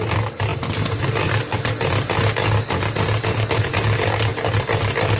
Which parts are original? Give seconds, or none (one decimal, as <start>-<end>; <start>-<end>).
0.0-5.2